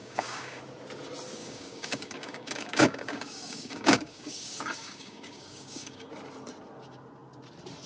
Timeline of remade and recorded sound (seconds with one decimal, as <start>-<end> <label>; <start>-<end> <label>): 0.0-0.6 remade; 0.6-1.4 recorded; 1.4-6.1 remade; 6.1-7.9 recorded

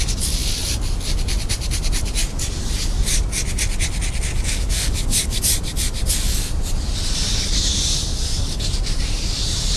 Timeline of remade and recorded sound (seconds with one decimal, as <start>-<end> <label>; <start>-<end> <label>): 0.0-4.3 recorded; 4.3-5.4 remade; 5.4-8.1 recorded; 8.1-8.7 remade; 8.7-9.8 recorded

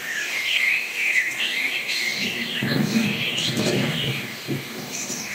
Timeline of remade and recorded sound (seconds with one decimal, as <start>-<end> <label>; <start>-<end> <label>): 0.0-5.3 remade

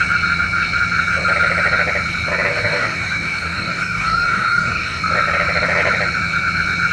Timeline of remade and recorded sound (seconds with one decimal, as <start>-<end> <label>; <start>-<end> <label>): 0.0-2.5 recorded; 2.5-5.0 remade; 5.0-6.9 recorded

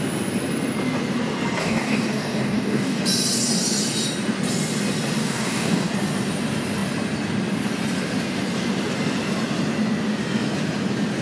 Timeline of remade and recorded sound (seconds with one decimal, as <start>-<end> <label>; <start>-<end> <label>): 0.0-1.6 recorded; 1.6-3.0 remade; 3.0-5.2 recorded; 5.2-5.9 remade; 5.9-11.2 recorded

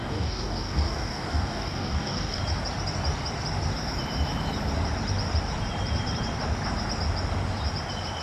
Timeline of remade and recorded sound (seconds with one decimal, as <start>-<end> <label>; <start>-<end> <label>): 0.0-2.4 remade; 2.4-8.2 recorded

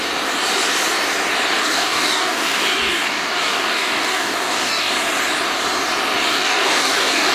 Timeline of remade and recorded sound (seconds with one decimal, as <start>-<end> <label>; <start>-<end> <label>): 0.0-1.6 recorded; 1.6-4.9 remade; 4.9-6.3 recorded; 6.3-7.3 remade

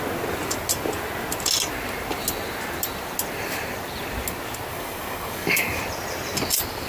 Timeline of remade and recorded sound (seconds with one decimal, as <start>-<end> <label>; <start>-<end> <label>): 0.0-4.7 recorded; 4.7-5.8 remade; 5.8-6.9 recorded